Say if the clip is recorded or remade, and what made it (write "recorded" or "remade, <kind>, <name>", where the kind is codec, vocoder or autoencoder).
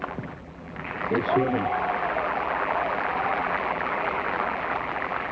remade, vocoder, BigVGAN v2